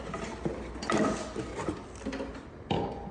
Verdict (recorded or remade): recorded